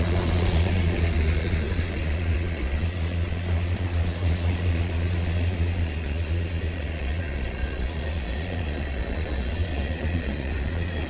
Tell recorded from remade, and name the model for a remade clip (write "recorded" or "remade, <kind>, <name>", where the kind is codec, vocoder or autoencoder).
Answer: remade, vocoder, Vocos